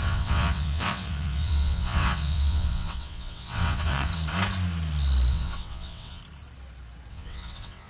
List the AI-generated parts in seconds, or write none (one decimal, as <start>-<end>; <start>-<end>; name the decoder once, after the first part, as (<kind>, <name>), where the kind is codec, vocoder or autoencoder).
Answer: 0.0-4.1 (vocoder, WaveNeXt); 5.3-6.2; 7.1-7.9